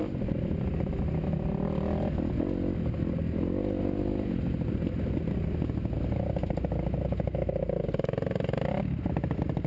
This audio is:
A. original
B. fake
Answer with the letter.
A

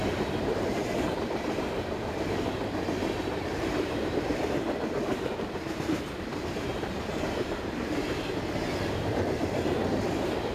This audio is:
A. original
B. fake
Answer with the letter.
B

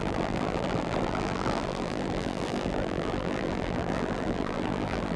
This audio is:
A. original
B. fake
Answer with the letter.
B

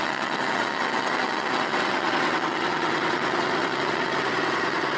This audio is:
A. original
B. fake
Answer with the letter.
B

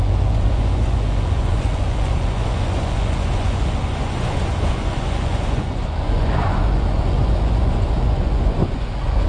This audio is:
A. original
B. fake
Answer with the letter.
B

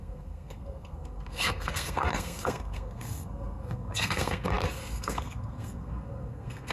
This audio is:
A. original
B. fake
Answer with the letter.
B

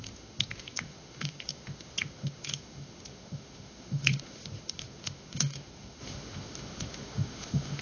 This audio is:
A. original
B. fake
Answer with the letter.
B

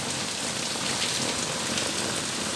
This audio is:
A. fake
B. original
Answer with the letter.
B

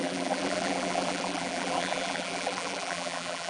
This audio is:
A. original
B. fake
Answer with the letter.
B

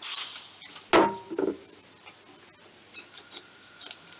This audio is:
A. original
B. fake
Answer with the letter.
A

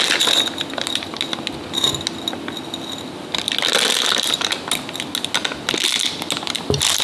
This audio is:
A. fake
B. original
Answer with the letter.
B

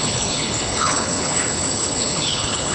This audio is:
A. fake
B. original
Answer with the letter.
A